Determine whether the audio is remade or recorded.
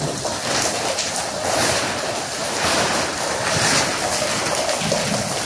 recorded